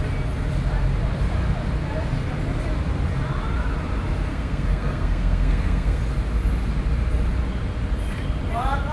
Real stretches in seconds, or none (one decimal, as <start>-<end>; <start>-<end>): 0.0-4.3; 6.0-8.9